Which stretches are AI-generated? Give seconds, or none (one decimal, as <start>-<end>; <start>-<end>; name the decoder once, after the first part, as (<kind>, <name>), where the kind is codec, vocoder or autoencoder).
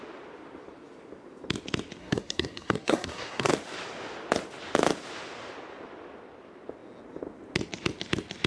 2.0-3.5 (codec, SNAC)